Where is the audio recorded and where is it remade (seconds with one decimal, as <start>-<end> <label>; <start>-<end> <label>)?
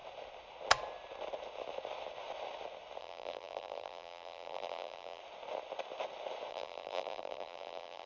0.0-3.0 recorded; 3.0-5.2 remade; 5.2-6.5 recorded; 6.5-8.1 remade